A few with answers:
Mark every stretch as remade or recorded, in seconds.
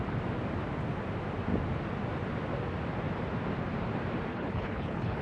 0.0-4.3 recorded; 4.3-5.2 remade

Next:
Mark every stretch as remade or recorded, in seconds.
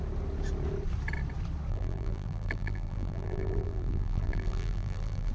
0.0-1.7 recorded; 1.7-5.3 remade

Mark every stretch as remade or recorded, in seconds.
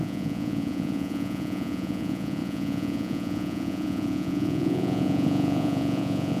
0.0-6.4 remade